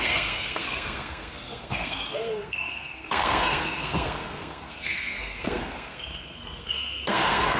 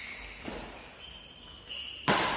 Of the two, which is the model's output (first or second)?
first